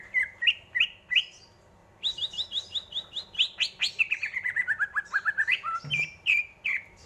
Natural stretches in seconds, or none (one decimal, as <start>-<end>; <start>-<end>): 1.8-4.0